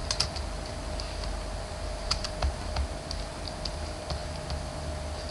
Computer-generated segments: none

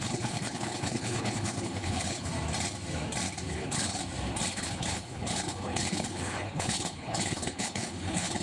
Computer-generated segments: 0.0-2.3 (codec, HILCodec); 3.5-4.0; 4.5-8.4

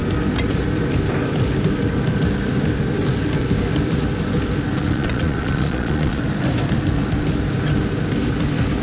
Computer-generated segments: 4.8-6.2 (vocoder, Vocos)

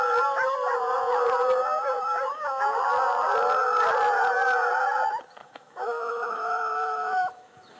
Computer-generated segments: 5.4-7.8 (autoencoder, DAC-VAE)